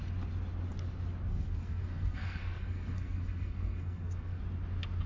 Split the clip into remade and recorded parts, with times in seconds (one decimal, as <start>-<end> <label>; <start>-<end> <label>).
0.0-1.3 recorded; 1.3-4.4 remade; 4.4-5.1 recorded